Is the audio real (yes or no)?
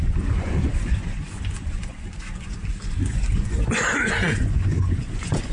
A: no